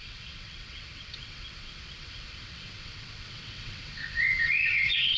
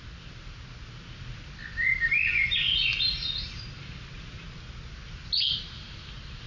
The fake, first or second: first